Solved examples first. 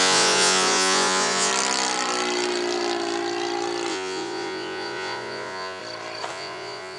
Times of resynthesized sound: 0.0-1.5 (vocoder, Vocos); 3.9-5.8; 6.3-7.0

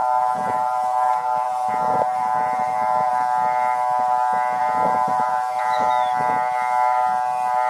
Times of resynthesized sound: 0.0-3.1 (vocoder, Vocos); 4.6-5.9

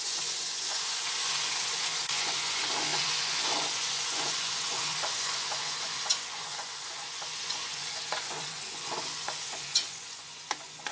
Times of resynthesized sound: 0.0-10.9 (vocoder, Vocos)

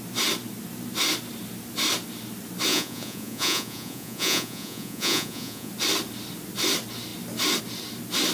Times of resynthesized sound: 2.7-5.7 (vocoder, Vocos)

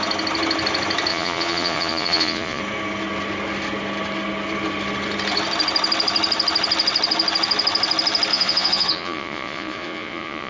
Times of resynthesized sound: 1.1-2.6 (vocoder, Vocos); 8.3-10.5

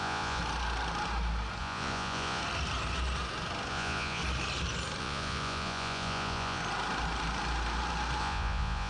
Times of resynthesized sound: 0.0-0.4 (vocoder, Vocos); 1.6-2.4; 3.7-4.2; 5.0-6.6; 8.2-8.9